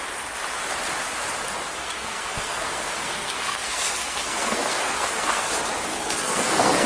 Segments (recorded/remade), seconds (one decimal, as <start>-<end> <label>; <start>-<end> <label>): 0.0-1.7 recorded; 1.7-5.5 remade; 5.5-5.9 recorded; 5.9-6.9 remade